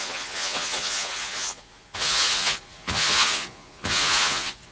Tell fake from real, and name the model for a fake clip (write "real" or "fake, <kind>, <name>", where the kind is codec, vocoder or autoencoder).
fake, vocoder, Vocos